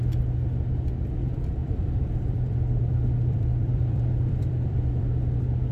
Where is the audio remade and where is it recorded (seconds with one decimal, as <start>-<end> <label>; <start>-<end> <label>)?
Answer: 0.0-1.6 recorded; 1.6-5.0 remade; 5.0-5.7 recorded